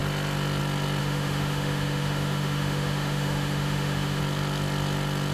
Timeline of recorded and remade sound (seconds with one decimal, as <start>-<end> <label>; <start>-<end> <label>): 0.0-1.0 recorded; 1.0-4.2 remade; 4.2-5.3 recorded